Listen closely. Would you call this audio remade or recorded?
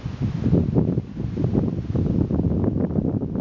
recorded